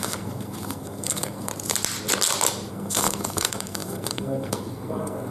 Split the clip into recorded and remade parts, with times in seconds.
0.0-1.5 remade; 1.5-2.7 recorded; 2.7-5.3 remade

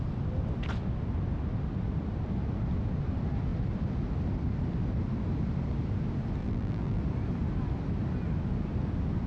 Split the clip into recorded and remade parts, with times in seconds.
0.0-6.4 recorded; 6.4-7.0 remade; 7.0-9.3 recorded